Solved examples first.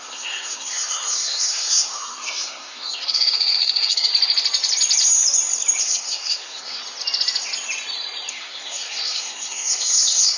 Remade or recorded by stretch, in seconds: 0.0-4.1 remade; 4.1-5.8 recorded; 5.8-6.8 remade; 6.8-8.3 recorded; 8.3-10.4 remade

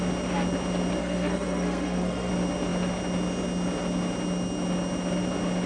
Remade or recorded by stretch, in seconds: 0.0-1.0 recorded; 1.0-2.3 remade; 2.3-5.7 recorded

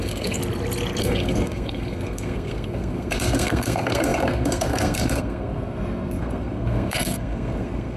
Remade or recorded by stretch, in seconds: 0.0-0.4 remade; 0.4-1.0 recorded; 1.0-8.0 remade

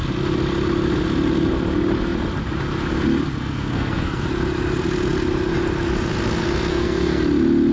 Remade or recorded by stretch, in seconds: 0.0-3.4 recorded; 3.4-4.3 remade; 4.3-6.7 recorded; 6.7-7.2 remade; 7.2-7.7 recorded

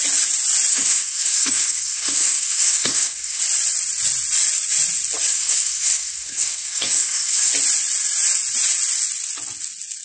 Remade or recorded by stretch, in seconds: 0.0-0.7 recorded; 0.7-3.4 remade; 3.4-5.3 recorded; 5.3-7.5 remade; 7.5-10.0 recorded

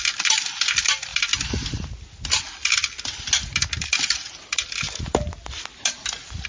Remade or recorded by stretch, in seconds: 0.0-6.5 recorded

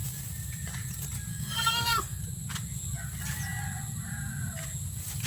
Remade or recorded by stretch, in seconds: 0.0-1.3 recorded; 1.3-2.2 remade; 2.2-5.3 recorded